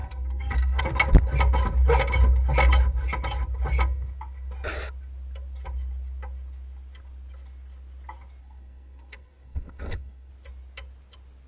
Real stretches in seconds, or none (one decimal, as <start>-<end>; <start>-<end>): 0.8-8.4; 10.3-11.5